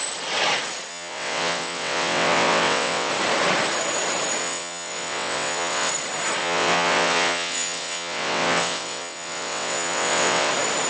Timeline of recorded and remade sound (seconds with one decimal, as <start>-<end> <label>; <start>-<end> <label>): 0.0-0.9 recorded; 0.9-3.1 remade; 3.1-4.4 recorded; 4.4-5.9 remade; 5.9-6.4 recorded; 6.4-10.5 remade; 10.5-10.9 recorded